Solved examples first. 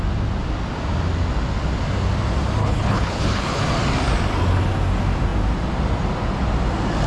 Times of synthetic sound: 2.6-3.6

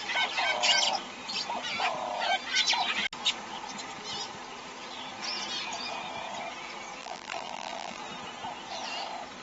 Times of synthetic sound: 7.0-8.0

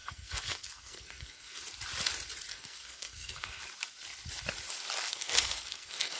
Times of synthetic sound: 0.0-1.6; 2.5-3.6; 5.1-6.2

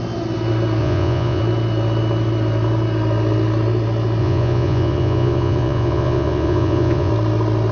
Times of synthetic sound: 0.8-1.4; 4.2-7.1

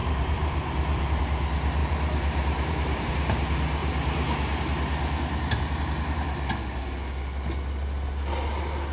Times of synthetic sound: 0.0-1.2; 1.8-3.1; 3.8-4.6

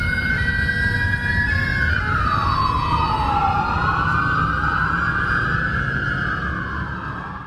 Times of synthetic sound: none

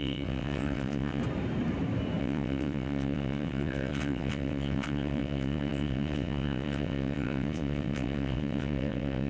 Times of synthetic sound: 0.0-1.2; 2.2-9.3